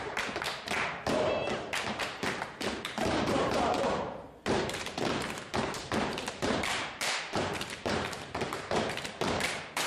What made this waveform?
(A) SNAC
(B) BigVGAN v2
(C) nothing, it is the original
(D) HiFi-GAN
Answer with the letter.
B